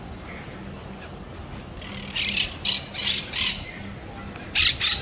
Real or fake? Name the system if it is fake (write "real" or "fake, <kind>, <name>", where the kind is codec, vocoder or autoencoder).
real